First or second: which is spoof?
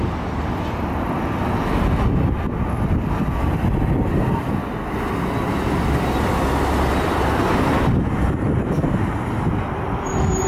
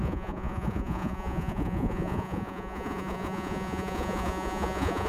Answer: second